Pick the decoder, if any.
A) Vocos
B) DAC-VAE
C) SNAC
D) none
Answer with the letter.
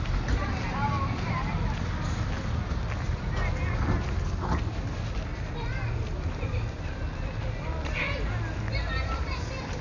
D